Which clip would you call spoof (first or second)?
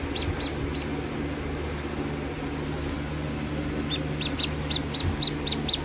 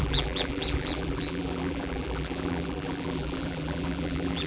second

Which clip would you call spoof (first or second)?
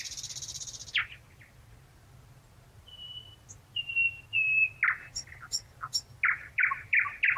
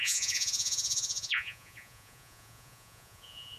second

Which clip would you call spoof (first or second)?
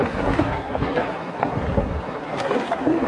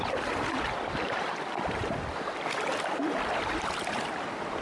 first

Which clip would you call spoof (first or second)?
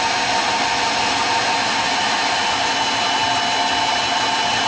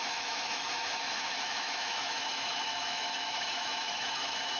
second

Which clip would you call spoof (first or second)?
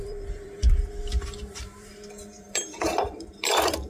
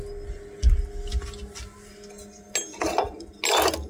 first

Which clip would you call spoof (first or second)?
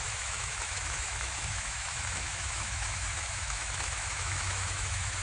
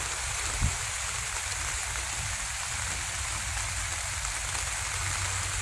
first